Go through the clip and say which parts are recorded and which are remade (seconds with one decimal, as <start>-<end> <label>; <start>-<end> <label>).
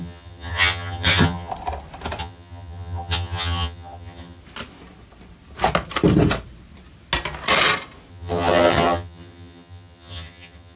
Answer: 0.0-1.5 remade; 1.5-2.2 recorded; 2.2-4.4 remade; 4.4-8.1 recorded; 8.1-10.8 remade